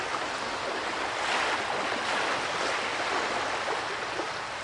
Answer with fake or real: real